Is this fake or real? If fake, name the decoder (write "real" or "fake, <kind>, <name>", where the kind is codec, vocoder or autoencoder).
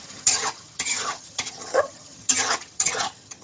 fake, vocoder, HiFi-GAN